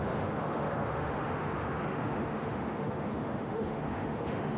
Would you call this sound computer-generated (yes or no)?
yes